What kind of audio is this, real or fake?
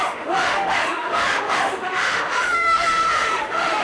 fake